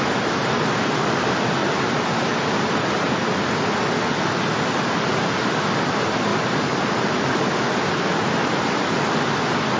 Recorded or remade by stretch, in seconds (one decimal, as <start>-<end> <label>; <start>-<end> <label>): 0.0-1.6 recorded; 1.6-2.6 remade; 2.6-8.1 recorded; 8.1-8.8 remade; 8.8-9.8 recorded